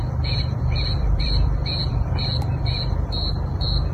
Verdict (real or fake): fake